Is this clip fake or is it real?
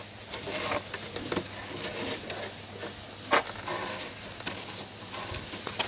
real